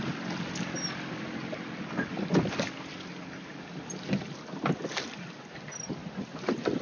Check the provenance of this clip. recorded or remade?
recorded